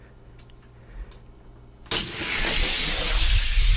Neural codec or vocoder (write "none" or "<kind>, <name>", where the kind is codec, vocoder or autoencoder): none